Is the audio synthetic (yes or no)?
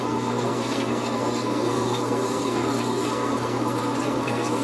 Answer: yes